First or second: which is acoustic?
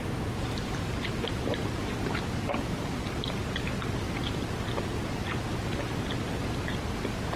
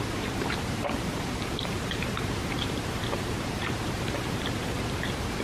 first